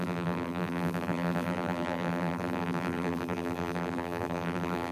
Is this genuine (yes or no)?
no